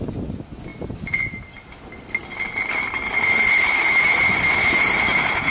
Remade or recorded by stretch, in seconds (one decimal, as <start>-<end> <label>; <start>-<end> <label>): 0.0-5.5 recorded